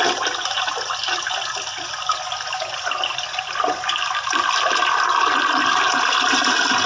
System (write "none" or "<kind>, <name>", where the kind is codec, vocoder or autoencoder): none